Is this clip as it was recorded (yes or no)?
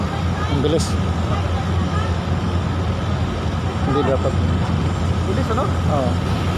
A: yes